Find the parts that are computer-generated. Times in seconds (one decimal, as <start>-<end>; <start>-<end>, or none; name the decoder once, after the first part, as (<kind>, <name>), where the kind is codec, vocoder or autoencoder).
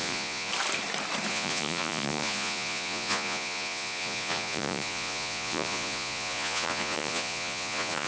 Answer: 0.0-0.5 (vocoder, Vocos); 1.3-8.1